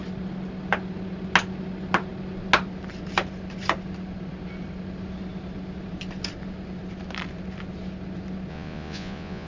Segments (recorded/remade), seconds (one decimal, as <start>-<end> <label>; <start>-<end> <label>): 0.0-8.5 recorded; 8.5-9.5 remade